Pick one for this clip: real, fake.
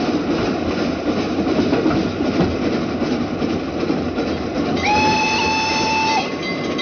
real